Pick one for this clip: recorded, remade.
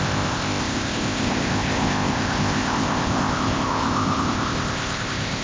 remade